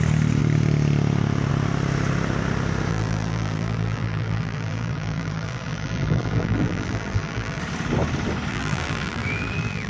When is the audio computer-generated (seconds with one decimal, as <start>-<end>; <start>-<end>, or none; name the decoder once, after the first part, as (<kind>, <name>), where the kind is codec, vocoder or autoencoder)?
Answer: 2.9-7.6 (vocoder, BigVGAN v2); 8.5-9.9